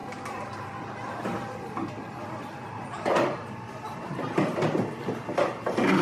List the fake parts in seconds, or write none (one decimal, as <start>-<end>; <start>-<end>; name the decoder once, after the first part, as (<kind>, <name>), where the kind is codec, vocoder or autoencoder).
none